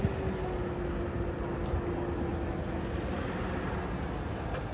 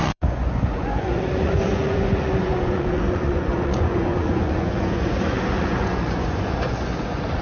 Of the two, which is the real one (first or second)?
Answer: first